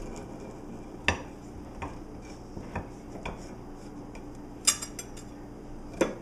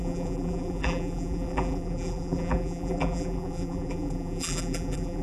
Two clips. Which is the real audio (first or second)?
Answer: first